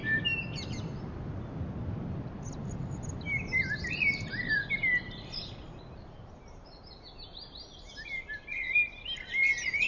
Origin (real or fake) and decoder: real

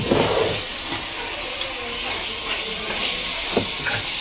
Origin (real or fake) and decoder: real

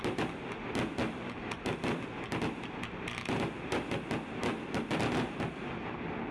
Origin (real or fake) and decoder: real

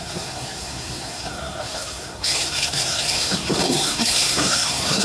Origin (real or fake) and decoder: fake, codec, SNAC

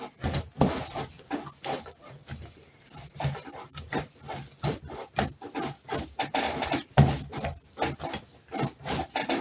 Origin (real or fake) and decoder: real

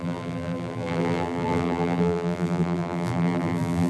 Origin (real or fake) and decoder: fake, vocoder, BigVGAN v2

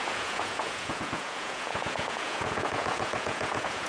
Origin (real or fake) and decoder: fake, vocoder, Vocos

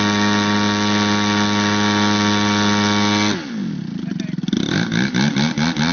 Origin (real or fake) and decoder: real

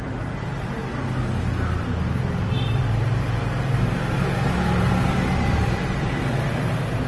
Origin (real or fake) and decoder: real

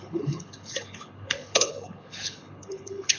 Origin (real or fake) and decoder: fake, codec, HILCodec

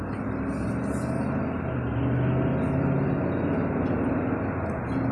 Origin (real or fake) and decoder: real